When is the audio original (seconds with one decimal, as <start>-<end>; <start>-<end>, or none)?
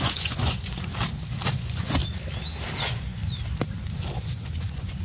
0.9-1.5; 2.0-2.8; 3.2-4.1